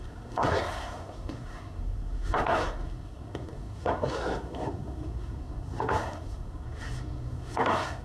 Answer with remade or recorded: remade